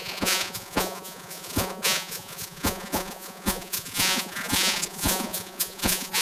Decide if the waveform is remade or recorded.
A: remade